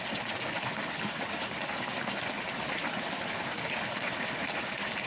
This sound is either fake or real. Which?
real